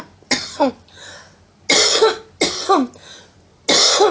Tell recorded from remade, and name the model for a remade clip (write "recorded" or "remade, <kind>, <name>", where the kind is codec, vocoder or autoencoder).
recorded